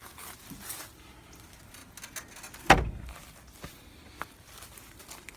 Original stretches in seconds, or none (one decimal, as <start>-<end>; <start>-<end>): 0.0-5.4